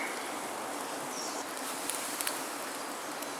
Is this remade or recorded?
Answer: recorded